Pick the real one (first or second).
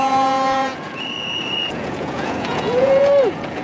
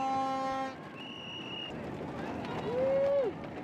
second